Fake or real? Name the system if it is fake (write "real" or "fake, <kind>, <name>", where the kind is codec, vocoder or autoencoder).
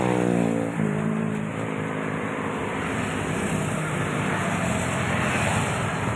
fake, vocoder, BigVGAN v2